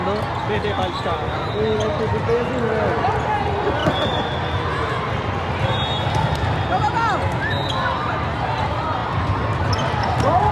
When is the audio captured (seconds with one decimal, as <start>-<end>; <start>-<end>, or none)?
0.0-9.0